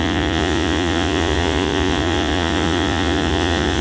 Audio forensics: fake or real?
fake